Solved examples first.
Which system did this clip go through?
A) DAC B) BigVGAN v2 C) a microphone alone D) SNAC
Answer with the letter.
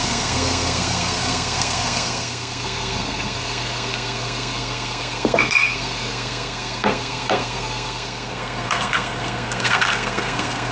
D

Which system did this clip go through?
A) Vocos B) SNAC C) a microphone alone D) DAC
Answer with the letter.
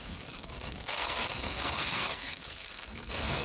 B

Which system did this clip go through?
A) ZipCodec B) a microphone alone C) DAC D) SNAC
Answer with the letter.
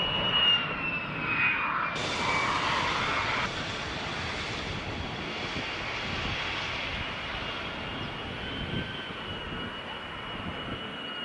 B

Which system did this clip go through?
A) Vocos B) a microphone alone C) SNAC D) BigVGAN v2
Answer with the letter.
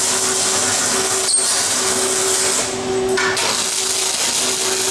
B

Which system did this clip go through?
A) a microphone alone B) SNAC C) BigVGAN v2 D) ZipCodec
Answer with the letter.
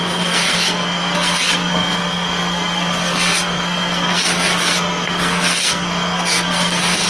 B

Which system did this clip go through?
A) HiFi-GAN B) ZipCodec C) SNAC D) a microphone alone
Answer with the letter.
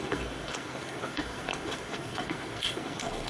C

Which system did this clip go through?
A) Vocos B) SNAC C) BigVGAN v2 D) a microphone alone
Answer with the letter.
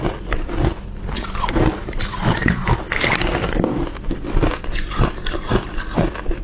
D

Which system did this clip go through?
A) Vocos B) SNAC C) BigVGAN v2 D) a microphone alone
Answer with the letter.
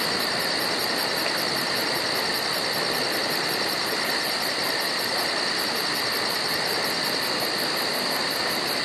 D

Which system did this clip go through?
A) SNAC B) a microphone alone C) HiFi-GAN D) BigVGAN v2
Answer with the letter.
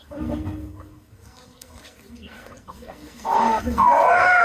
A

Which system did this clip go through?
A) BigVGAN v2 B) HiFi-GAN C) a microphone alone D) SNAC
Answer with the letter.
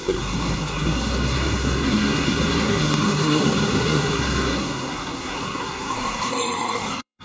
D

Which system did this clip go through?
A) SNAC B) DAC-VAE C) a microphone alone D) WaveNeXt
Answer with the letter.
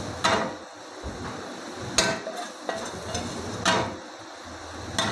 C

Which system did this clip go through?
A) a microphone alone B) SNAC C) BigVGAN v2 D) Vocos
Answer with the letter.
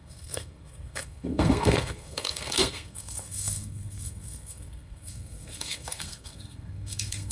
B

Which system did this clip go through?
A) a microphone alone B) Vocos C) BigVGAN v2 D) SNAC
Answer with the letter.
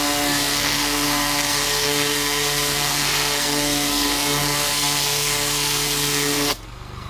D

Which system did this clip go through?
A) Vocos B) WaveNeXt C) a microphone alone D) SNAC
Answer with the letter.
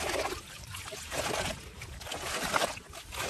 C